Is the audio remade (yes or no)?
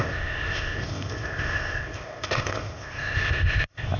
yes